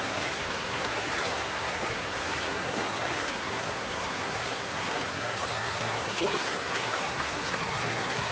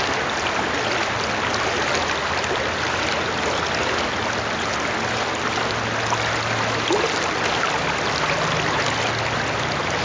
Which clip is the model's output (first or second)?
first